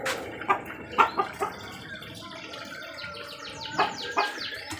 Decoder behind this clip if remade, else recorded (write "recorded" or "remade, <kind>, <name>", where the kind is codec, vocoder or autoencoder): remade, vocoder, BigVGAN v2